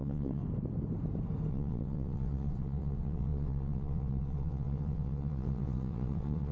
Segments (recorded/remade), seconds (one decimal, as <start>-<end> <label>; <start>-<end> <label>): 0.0-0.4 remade; 0.4-1.5 recorded; 1.5-6.5 remade